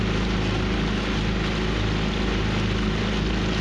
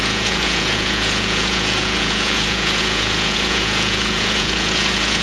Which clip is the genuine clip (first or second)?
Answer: first